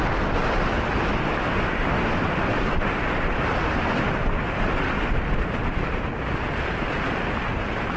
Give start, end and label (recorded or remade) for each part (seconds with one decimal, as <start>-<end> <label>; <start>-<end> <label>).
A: 0.0-8.0 recorded